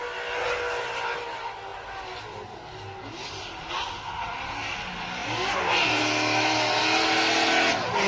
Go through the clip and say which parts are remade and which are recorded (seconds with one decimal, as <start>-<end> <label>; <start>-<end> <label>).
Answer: 0.0-8.1 recorded